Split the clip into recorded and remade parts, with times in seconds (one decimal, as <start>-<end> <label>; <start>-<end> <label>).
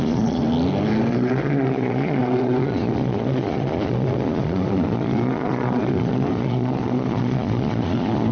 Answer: 0.0-0.4 remade; 0.4-1.1 recorded; 1.1-8.3 remade